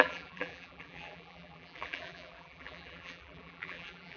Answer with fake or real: fake